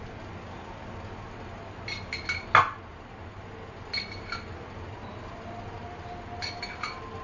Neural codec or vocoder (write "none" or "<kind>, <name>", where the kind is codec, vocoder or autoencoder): none